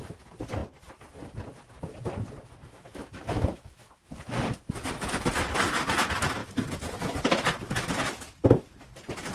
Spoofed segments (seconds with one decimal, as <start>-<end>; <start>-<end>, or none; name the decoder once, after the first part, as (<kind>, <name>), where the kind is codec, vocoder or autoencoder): 2.6-4.1 (autoencoder, DAC-VAE)